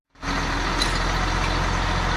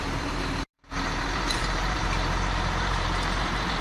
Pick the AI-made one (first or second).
second